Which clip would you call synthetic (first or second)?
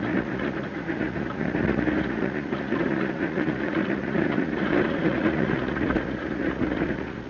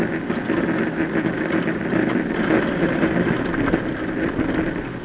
first